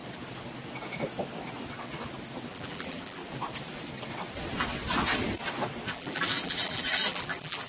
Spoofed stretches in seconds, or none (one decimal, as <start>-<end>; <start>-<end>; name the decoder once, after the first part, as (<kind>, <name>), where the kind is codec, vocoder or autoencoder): 2.5-3.2 (vocoder, BigVGAN v2); 5.9-7.7